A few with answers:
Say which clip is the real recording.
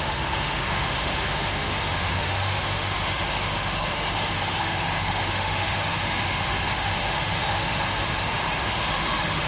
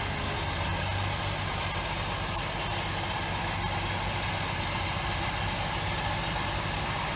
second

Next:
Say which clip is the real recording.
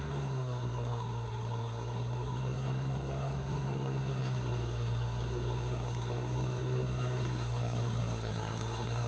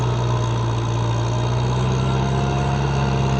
second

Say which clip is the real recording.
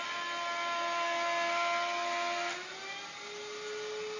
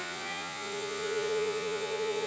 first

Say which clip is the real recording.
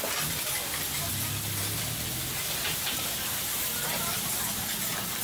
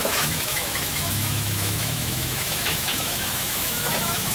first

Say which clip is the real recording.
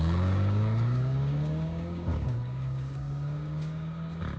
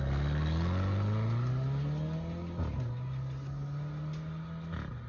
second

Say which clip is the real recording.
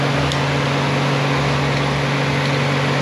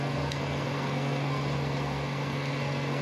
first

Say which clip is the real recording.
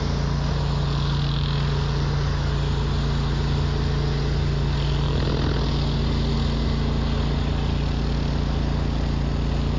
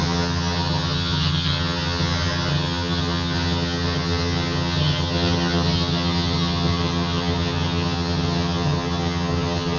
first